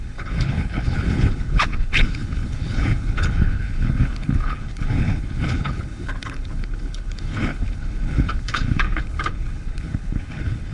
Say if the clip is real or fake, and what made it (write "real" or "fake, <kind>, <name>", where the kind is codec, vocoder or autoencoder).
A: fake, codec, HILCodec